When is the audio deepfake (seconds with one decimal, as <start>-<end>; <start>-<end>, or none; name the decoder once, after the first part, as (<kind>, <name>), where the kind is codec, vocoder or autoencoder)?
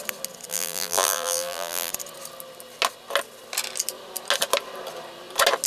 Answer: 0.5-1.9 (vocoder, BigVGAN v2)